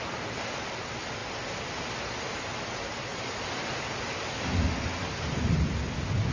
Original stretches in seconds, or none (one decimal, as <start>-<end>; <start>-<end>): 0.0-6.3